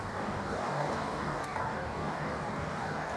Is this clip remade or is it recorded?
remade